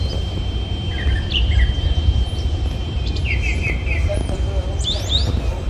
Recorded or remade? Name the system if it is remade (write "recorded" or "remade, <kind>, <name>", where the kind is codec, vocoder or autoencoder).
remade, vocoder, BigVGAN v2